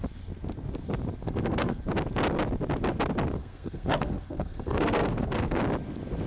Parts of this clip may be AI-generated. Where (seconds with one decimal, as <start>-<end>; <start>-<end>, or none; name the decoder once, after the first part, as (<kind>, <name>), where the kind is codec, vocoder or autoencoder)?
1.2-1.8 (codec, SNAC); 3.4-5.6